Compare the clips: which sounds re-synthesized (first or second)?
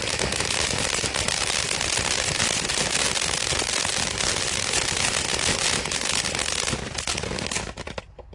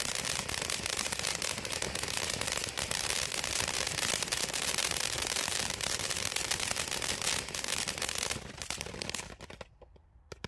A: second